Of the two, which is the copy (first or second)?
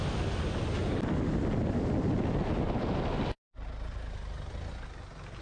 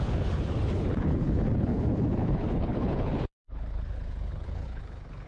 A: second